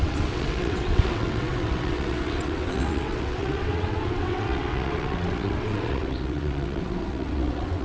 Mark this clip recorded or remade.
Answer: remade